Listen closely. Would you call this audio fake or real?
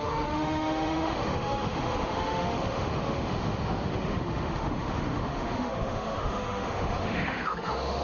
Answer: fake